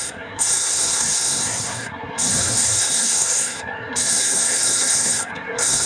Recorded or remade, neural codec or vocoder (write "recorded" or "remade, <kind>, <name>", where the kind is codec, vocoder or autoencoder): remade, codec, SNAC